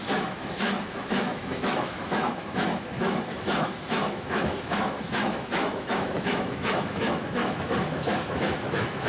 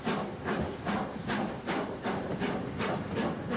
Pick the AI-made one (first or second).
first